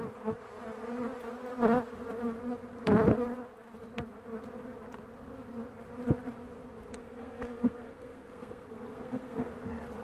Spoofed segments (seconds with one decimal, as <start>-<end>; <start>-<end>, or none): 7.0-9.5